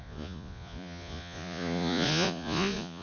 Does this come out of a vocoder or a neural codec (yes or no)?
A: yes